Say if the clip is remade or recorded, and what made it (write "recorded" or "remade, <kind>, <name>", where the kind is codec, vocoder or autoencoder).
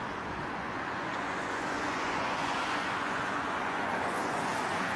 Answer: remade, vocoder, Vocos